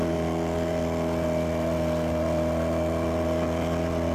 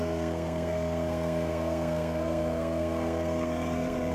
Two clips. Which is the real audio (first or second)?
first